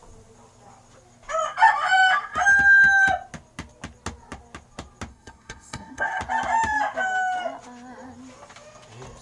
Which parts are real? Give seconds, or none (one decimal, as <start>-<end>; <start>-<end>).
0.0-5.1; 6.2-9.2